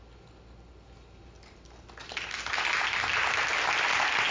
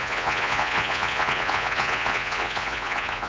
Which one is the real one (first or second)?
first